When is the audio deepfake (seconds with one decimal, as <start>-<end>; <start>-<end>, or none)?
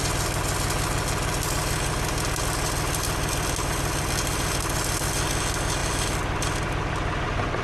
5.8-7.6